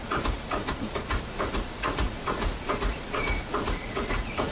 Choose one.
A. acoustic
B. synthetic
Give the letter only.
B